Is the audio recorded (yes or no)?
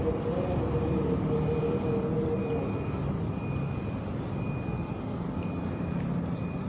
yes